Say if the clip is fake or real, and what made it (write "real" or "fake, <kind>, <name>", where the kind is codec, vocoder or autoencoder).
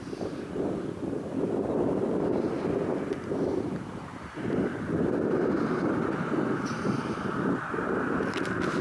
fake, vocoder, BigVGAN v2